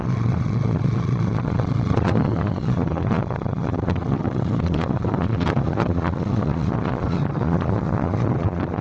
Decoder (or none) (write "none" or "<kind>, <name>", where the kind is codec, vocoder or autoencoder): vocoder, Vocos